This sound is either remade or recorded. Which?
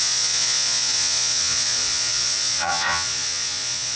remade